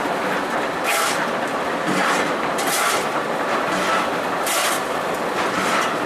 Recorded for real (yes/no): yes